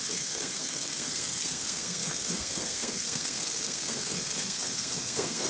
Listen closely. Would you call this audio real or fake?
fake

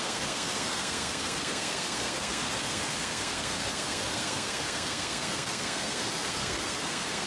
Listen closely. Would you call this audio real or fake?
fake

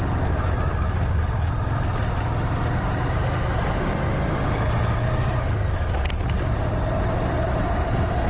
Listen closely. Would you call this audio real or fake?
real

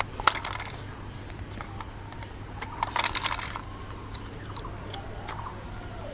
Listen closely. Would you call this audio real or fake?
real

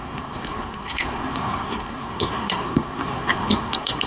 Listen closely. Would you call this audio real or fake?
fake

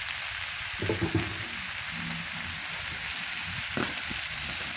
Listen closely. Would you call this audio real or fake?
real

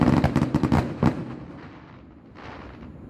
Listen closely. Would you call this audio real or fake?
real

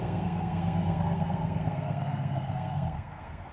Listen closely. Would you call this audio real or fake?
fake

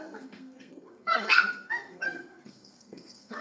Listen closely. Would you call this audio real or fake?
fake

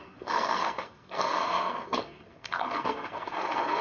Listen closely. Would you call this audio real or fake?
fake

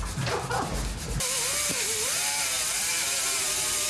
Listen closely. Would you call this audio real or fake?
real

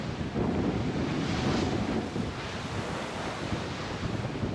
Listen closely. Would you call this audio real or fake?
real